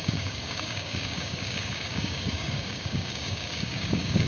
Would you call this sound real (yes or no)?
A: no